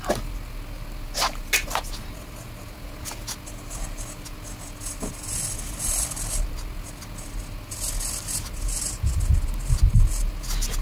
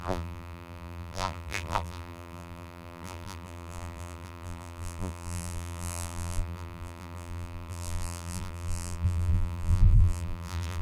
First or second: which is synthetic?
second